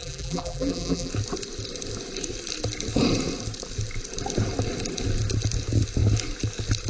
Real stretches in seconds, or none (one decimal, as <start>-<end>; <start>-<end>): 1.1-6.9